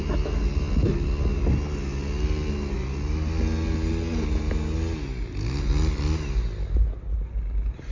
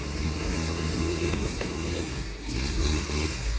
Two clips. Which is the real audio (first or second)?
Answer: first